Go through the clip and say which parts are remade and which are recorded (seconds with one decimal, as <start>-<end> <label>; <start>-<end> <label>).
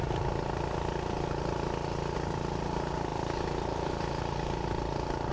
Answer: 0.0-5.3 recorded